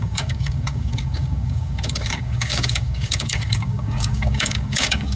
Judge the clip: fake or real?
fake